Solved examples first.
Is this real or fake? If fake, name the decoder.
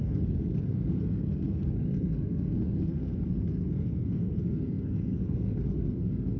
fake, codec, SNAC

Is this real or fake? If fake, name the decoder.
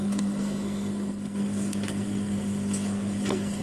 fake, codec, SNAC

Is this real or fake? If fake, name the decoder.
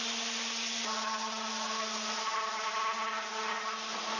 real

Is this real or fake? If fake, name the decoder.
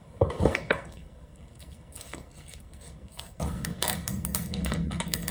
fake, codec, SNAC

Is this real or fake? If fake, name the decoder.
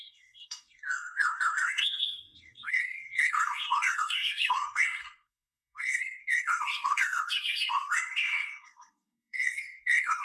fake, codec, SNAC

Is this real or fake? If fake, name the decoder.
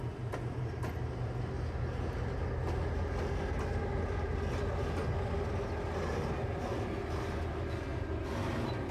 real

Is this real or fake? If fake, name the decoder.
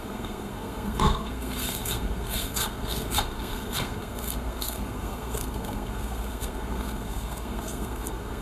fake, codec, SNAC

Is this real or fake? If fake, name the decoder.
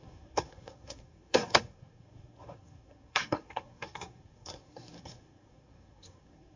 fake, codec, SNAC